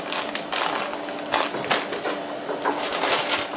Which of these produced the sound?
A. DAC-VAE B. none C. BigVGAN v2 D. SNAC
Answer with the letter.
B